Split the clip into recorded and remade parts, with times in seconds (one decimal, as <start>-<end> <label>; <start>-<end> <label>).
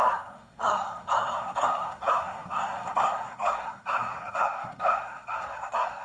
0.0-6.0 remade